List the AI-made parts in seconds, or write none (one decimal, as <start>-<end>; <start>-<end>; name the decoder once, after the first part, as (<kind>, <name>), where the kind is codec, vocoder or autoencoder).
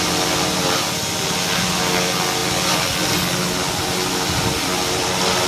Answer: none